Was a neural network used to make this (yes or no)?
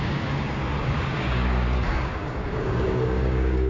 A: yes